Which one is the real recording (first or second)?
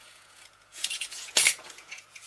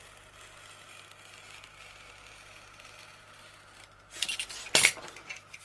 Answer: second